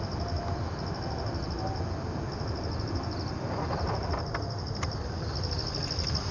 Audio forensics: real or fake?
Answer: real